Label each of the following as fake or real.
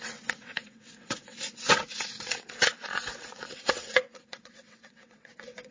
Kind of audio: fake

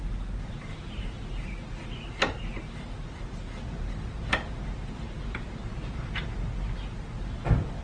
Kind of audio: real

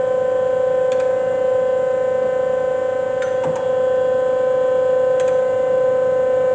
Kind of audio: real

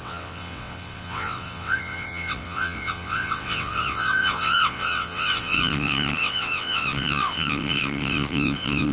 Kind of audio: fake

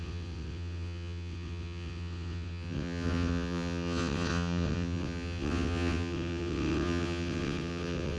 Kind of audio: fake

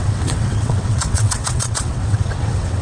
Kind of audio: fake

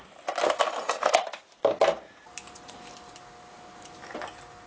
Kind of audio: real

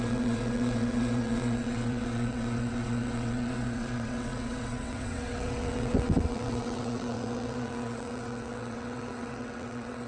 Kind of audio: fake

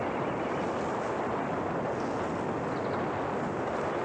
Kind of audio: real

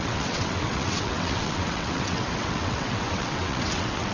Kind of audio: fake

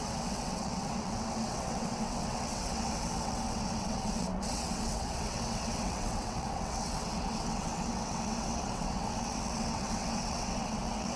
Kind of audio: fake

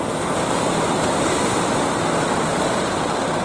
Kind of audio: real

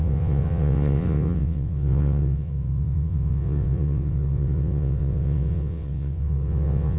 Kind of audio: fake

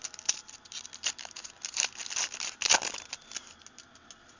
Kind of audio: real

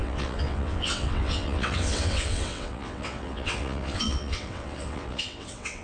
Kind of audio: fake